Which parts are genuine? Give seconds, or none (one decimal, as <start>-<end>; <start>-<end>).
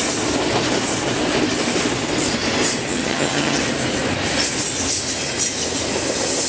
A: 0.0-2.9; 3.6-6.5